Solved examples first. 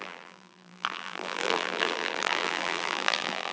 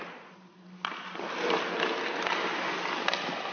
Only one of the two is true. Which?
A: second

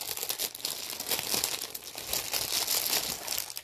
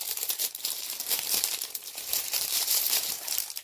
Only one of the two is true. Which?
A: first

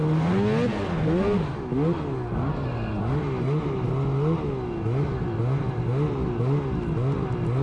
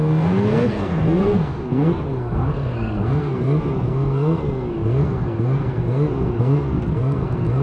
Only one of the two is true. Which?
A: first